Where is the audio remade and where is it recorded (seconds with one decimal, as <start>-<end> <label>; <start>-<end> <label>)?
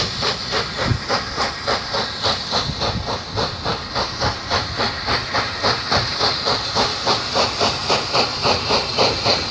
0.0-6.9 recorded; 6.9-7.9 remade; 7.9-8.3 recorded; 8.3-9.5 remade